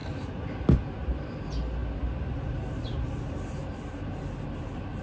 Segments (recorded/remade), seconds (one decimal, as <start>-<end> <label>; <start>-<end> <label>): 0.0-5.0 recorded